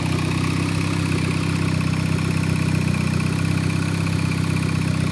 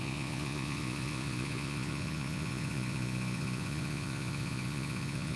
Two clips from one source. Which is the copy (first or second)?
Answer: second